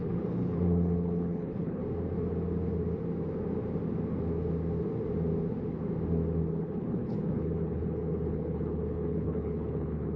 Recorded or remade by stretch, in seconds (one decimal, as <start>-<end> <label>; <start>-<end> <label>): 0.0-1.8 remade; 1.8-6.5 recorded; 6.5-10.2 remade